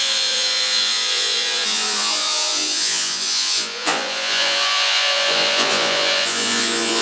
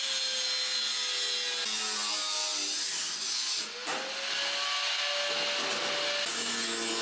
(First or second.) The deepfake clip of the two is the first